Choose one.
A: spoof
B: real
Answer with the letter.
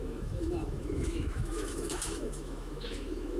A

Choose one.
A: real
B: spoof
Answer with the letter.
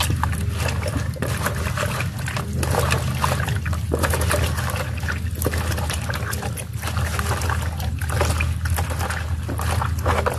A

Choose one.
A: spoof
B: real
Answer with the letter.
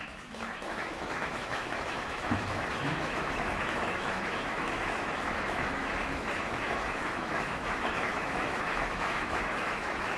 A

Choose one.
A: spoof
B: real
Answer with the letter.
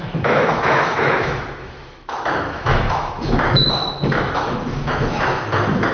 A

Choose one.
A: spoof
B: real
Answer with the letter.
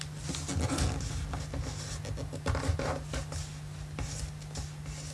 B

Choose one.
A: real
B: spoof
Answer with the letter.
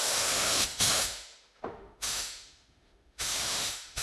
B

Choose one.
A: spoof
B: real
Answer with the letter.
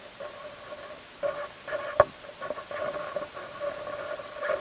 B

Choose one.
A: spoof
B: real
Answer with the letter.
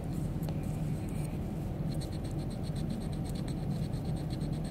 B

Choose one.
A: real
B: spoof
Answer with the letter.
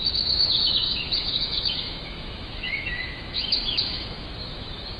B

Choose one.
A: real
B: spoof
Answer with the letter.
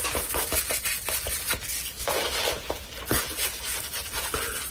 A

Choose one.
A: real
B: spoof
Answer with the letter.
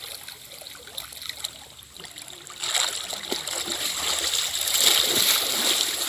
A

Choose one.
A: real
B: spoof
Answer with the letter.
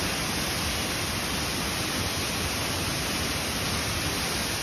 A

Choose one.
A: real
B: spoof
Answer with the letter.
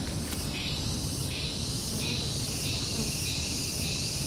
A